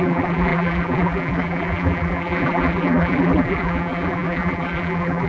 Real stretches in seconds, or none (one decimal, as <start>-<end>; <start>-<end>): none